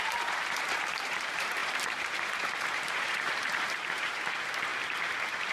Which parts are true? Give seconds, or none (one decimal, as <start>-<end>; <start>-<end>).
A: none